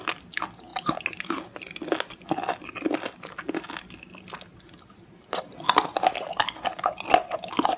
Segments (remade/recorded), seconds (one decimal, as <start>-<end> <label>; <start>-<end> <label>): 0.0-7.8 recorded